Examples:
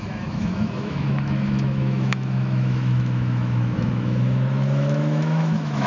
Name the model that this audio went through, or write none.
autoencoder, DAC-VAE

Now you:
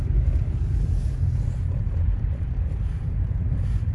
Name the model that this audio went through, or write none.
vocoder, BigVGAN v2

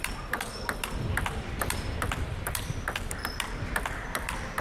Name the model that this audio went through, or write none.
vocoder, BigVGAN v2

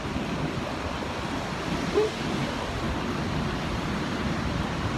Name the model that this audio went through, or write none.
none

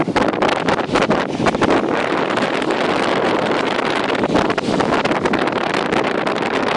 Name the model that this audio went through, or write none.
none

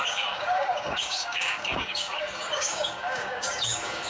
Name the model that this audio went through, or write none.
codec, DAC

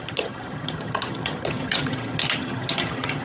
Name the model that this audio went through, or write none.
vocoder, HiFi-GAN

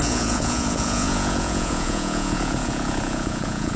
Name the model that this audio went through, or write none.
vocoder, Vocos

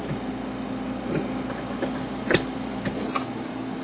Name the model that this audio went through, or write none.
none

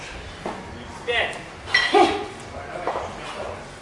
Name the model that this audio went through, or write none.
none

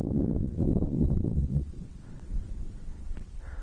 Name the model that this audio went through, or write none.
vocoder, WaveNeXt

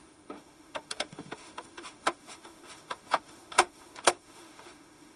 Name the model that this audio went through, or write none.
autoencoder, DAC-VAE